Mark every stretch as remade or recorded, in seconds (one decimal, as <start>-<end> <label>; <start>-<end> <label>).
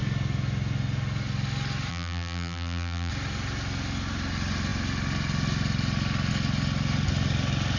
0.0-1.9 recorded; 1.9-3.1 remade; 3.1-7.8 recorded